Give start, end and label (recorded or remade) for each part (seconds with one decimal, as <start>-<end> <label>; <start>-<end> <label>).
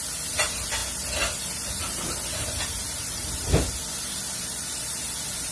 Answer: 0.0-5.5 recorded